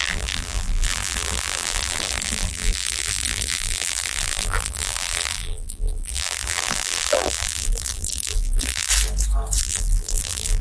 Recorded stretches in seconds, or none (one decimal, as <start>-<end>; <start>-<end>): 8.9-9.6

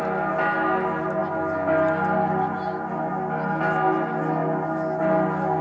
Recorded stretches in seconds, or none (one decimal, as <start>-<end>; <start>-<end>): 0.0-5.6

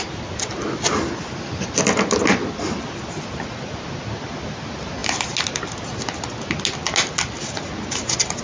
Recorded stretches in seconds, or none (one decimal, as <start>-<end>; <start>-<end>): 0.0-8.4

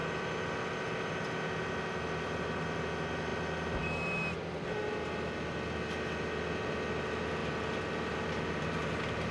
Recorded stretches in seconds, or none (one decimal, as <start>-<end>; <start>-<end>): 0.0-9.3

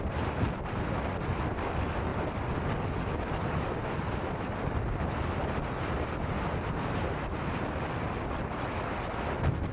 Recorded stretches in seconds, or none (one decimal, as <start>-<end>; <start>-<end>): 0.0-9.7

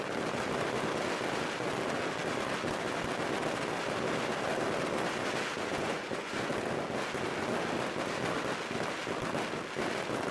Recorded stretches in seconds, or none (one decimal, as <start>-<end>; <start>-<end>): 0.0-5.7; 6.5-10.3

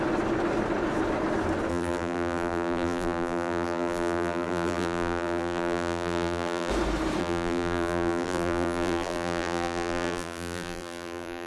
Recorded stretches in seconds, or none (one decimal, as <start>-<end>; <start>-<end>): 0.0-1.7; 6.7-7.2